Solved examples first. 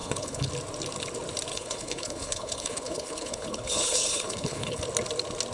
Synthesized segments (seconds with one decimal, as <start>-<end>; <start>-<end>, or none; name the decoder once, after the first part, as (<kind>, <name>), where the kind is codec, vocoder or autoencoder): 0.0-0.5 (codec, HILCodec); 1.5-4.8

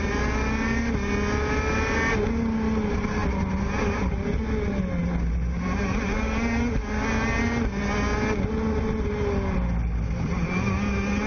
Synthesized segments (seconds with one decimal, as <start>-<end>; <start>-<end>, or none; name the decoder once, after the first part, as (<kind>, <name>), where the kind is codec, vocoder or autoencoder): none

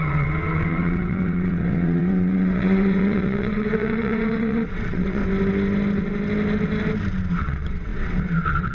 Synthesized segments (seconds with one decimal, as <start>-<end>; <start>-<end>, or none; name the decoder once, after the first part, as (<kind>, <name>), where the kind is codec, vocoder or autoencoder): 0.0-5.2 (vocoder, WaveNeXt); 7.3-8.7

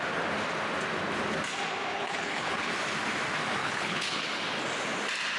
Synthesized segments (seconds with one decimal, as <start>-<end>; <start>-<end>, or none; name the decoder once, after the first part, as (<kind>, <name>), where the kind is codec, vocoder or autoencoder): 1.9-2.7 (codec, HILCodec); 3.6-4.4

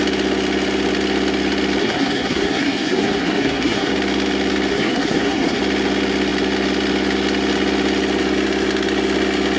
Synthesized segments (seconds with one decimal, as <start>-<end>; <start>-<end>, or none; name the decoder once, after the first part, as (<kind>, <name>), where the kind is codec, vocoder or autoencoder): 1.8-3.9 (codec, SNAC); 4.7-5.6

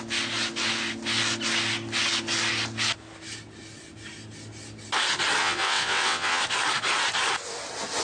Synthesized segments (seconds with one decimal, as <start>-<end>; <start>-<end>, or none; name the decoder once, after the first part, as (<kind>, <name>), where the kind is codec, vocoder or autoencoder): 5.4-6.4 (vocoder, WaveNeXt)

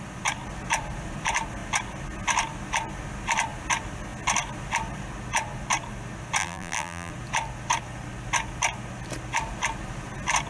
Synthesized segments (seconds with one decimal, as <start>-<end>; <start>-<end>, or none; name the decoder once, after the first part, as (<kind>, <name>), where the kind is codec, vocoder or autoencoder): 6.4-7.1 (vocoder, BigVGAN v2)